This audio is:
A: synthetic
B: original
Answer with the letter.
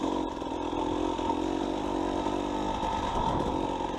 B